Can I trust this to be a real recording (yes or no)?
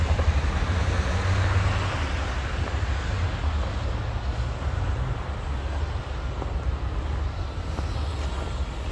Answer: yes